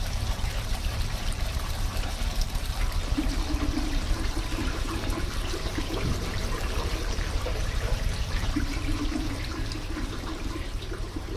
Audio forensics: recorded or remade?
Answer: remade